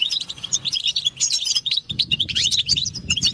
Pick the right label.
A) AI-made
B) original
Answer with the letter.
A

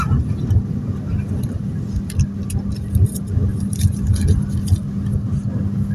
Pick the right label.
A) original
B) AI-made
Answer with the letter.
A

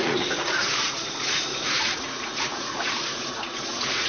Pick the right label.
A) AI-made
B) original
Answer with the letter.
A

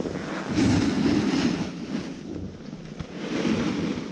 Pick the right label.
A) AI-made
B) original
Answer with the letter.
B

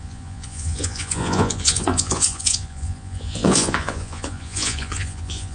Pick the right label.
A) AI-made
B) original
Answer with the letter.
A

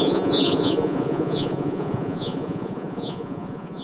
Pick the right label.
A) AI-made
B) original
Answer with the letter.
A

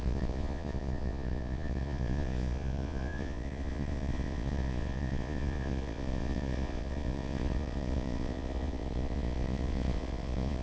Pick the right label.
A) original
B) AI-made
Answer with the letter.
B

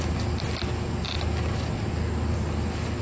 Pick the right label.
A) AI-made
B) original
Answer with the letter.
B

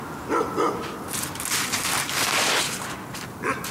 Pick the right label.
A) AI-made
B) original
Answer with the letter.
B